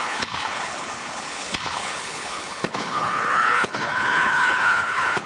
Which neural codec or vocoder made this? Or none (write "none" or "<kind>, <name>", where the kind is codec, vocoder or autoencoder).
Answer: codec, HILCodec